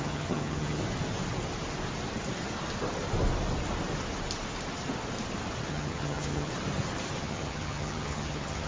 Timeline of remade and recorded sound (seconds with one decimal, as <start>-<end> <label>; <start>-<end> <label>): 0.0-0.8 remade; 0.8-5.7 recorded; 5.7-6.5 remade; 6.5-7.2 recorded; 7.2-8.7 remade